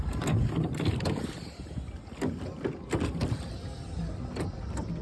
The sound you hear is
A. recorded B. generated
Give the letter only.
A